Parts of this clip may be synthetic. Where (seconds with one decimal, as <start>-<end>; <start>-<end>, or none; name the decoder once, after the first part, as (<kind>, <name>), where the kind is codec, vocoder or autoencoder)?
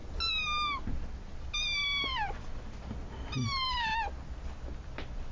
none